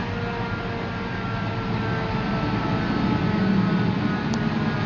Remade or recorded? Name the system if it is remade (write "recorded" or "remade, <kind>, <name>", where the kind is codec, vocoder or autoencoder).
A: recorded